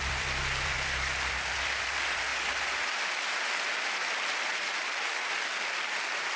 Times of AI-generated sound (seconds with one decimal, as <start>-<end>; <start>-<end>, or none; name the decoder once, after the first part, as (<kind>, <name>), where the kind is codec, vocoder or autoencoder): 0.0-2.3 (vocoder, BigVGAN v2); 5.3-6.4